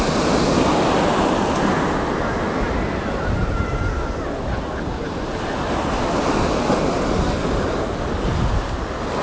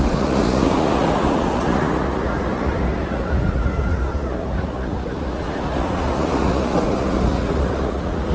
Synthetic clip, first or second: second